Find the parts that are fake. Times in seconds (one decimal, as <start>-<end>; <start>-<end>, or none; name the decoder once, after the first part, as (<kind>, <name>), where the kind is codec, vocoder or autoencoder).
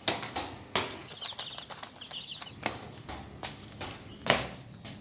none